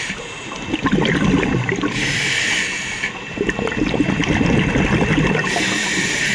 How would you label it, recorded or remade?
recorded